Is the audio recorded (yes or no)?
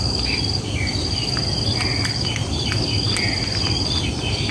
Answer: yes